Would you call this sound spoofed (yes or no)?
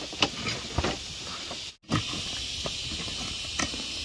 no